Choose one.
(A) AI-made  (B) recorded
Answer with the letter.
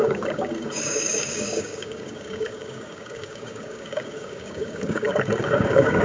A